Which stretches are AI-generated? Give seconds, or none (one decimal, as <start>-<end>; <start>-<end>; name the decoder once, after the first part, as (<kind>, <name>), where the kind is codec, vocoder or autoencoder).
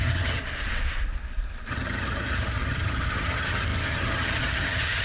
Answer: 0.0-0.4 (vocoder, HiFi-GAN); 1.7-5.0